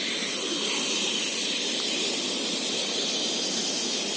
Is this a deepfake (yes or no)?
no